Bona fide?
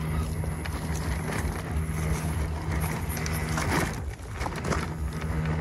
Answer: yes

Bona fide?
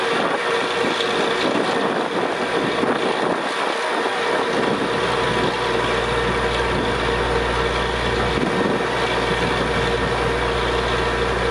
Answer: yes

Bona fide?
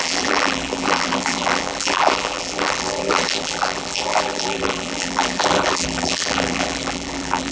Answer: no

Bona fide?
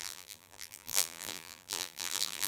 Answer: no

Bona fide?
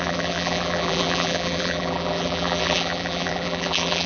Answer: no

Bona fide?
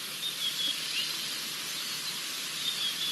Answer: yes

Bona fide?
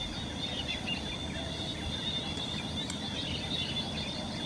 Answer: yes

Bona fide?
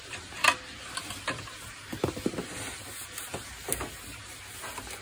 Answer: yes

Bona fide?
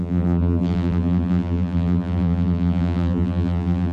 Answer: no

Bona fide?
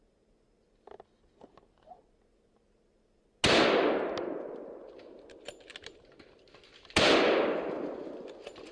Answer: yes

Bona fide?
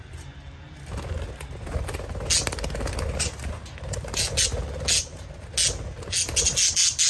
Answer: yes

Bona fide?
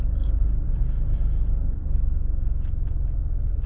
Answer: yes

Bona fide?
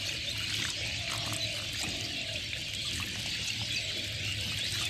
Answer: no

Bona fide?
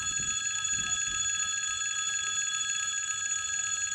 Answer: no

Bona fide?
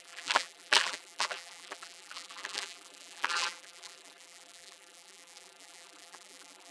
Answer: no